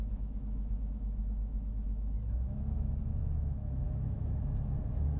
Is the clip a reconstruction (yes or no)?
yes